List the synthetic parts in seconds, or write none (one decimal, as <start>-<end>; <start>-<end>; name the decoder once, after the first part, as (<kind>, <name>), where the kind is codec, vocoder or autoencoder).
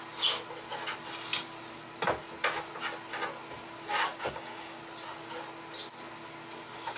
4.1-4.8 (codec, DAC)